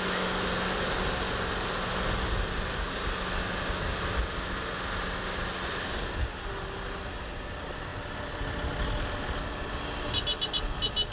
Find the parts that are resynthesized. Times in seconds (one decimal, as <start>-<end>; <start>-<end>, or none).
none